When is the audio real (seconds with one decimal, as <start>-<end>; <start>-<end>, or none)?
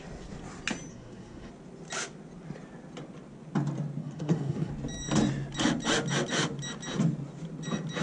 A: 0.0-0.9; 1.5-4.0; 4.7-8.0